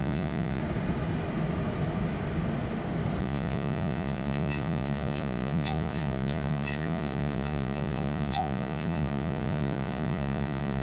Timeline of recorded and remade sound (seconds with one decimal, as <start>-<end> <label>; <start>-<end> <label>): 0.0-0.6 remade; 0.6-3.2 recorded; 3.2-10.8 remade

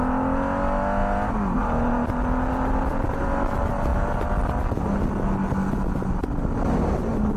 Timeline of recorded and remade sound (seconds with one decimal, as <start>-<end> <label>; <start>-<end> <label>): 0.0-7.4 recorded

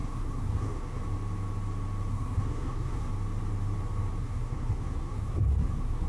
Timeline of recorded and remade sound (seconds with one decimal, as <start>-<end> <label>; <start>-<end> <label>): 0.0-1.0 remade; 1.0-2.1 recorded; 2.1-3.1 remade; 3.1-4.2 recorded; 4.2-6.1 remade

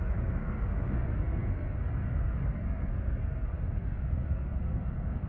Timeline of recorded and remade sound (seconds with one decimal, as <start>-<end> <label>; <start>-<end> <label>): 0.0-5.3 remade

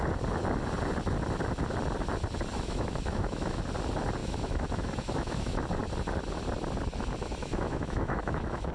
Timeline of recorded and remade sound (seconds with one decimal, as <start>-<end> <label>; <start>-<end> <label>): 0.0-2.5 recorded; 2.5-3.6 remade; 3.6-4.2 recorded; 4.2-5.6 remade; 5.6-7.4 recorded; 7.4-8.7 remade